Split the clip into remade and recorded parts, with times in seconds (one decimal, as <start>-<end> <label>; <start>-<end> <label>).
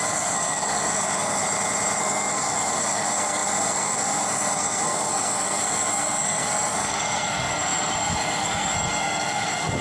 0.0-1.4 remade; 1.4-2.0 recorded; 2.0-9.8 remade